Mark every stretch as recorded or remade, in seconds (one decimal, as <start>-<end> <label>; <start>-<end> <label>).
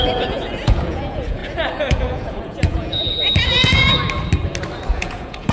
0.0-3.9 remade; 3.9-4.9 recorded; 4.9-5.5 remade